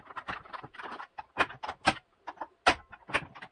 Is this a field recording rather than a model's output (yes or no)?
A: yes